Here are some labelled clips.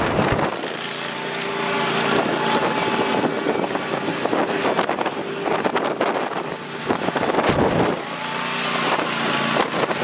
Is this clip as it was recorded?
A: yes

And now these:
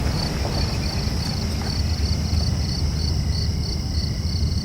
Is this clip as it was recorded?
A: yes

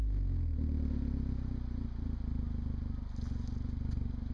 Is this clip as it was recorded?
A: yes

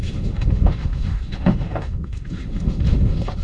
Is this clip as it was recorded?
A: no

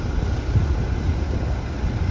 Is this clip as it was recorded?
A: yes